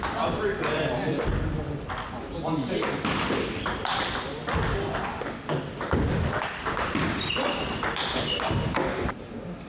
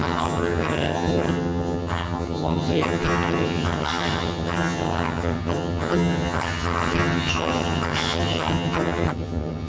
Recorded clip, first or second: first